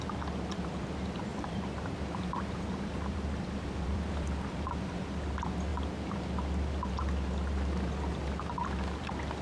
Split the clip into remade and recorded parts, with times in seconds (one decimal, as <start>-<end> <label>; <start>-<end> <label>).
0.0-1.3 recorded; 1.3-5.0 remade; 5.0-9.4 recorded